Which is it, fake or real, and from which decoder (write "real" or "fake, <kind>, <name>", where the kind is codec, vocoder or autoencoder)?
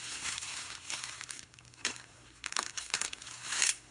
fake, codec, SNAC